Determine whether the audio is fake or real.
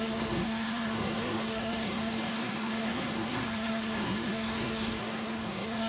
fake